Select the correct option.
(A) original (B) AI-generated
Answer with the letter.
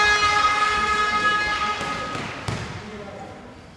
A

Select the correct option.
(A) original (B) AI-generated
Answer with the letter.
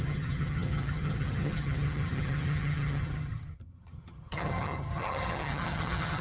B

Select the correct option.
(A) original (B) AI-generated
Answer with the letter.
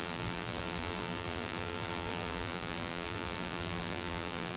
B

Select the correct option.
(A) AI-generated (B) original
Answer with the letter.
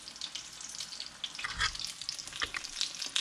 B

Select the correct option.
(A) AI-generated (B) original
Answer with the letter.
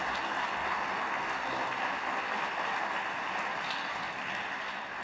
B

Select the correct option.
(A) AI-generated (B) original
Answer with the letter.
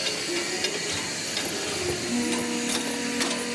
B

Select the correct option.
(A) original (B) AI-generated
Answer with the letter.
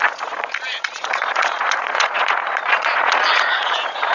B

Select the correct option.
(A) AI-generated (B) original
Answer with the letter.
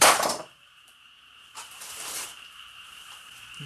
A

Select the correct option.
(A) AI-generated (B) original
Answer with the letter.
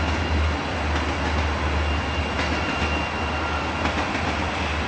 B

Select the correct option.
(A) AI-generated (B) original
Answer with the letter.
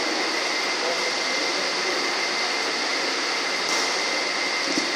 B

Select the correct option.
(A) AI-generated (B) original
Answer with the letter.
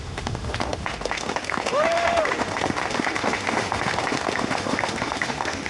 A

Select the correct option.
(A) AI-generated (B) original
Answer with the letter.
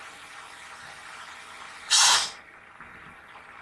B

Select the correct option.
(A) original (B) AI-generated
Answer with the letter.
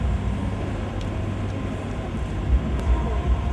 A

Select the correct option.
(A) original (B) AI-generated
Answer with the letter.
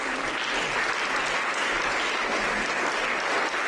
A